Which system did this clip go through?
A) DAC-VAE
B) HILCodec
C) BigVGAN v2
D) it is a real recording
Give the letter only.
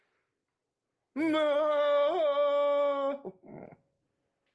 D